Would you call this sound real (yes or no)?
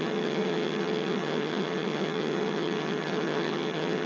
no